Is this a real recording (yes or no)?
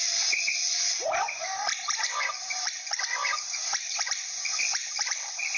no